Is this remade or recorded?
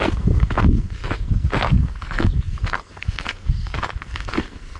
remade